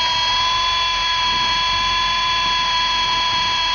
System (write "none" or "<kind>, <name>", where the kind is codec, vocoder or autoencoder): none